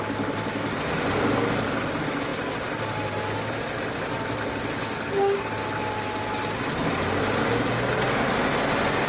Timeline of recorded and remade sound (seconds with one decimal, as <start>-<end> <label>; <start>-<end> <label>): 0.0-9.1 recorded